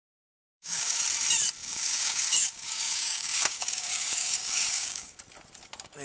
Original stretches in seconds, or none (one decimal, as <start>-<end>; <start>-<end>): 1.0-1.6; 5.2-6.0